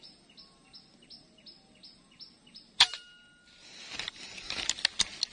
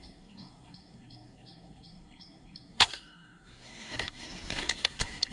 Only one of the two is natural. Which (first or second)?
first